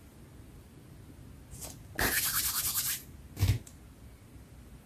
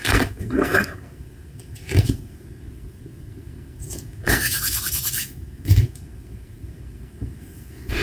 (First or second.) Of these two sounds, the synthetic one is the second